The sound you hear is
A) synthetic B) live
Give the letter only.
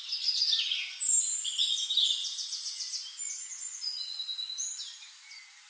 B